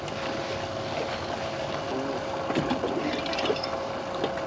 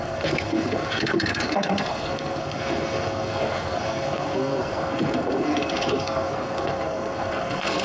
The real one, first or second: first